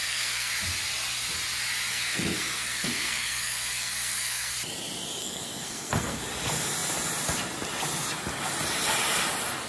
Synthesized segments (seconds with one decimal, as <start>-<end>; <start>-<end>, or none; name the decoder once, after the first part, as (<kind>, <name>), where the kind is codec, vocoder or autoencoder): 0.0-0.5 (codec, SNAC); 1.9-4.5; 5.2-6.2